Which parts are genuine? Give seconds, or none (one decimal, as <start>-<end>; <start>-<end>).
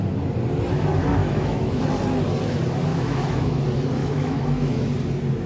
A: 0.0-1.2; 1.8-2.9; 3.6-4.0; 4.9-5.5